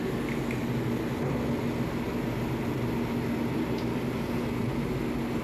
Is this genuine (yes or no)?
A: yes